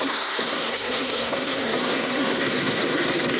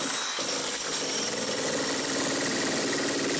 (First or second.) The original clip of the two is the second